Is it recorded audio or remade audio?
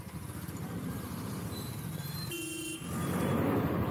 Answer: recorded